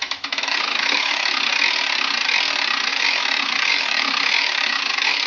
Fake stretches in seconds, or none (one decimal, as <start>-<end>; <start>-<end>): 0.0-1.5; 2.9-5.3